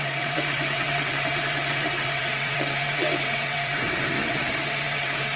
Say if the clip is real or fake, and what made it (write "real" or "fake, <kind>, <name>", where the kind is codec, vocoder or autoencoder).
fake, vocoder, WaveNeXt